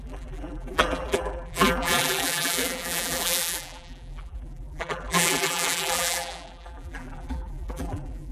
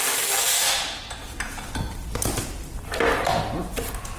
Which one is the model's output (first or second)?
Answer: first